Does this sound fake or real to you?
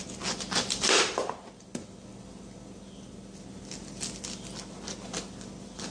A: real